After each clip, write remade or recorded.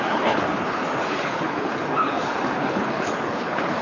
remade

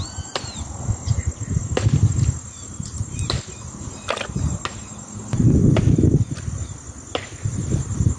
recorded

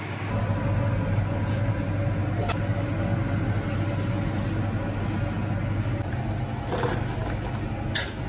recorded